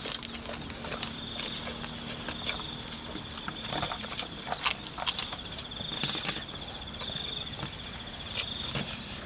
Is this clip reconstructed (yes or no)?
no